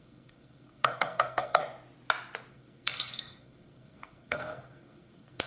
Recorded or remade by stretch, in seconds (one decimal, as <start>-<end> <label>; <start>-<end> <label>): 0.0-1.6 remade; 1.6-2.5 recorded; 2.5-5.5 remade